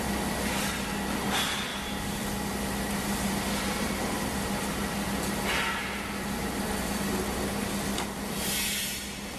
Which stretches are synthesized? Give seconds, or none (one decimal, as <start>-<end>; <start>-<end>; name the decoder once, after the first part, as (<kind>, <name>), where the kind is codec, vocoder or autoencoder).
none